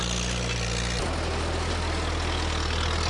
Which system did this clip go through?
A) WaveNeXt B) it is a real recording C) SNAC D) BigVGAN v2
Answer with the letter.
B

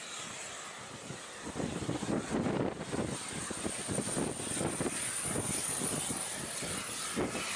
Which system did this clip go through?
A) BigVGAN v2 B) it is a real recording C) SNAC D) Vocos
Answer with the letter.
B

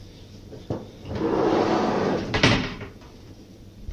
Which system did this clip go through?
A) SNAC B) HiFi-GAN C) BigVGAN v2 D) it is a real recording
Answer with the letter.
C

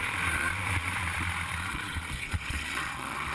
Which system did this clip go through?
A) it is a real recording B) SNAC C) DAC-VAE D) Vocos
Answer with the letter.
D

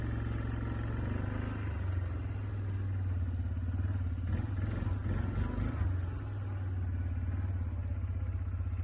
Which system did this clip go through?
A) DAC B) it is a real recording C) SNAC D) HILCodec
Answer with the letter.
B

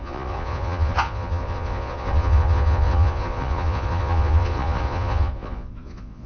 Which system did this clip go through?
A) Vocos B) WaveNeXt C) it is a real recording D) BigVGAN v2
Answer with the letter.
A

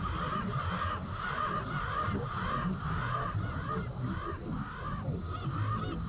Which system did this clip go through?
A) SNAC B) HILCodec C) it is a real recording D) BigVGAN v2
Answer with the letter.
C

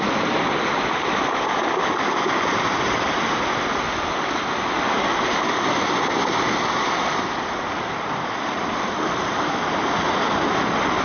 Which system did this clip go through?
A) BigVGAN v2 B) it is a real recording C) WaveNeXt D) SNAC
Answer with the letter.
B